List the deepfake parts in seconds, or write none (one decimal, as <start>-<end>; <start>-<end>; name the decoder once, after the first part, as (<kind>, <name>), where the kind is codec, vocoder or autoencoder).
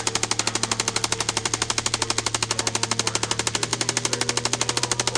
1.4-1.9 (vocoder, BigVGAN v2)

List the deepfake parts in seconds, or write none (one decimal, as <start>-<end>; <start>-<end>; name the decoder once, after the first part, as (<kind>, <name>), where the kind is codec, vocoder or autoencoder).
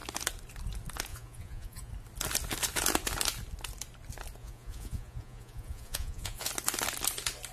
1.1-1.9 (vocoder, Vocos); 4.4-6.5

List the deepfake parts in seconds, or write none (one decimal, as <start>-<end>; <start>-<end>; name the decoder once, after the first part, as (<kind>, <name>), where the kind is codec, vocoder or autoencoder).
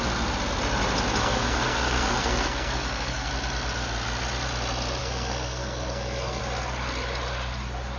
1.2-3.3 (codec, SNAC); 5.0-6.4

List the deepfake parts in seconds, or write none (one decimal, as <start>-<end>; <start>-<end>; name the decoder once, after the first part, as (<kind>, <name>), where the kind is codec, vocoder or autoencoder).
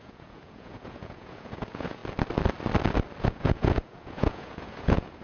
0.0-2.0 (vocoder, Vocos); 3.2-5.2